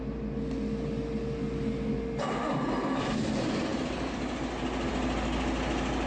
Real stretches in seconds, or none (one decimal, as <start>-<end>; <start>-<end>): 0.0-6.1